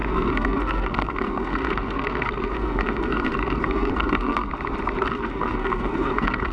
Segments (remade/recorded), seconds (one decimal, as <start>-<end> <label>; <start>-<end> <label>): 0.0-4.5 remade; 4.5-5.1 recorded; 5.1-6.5 remade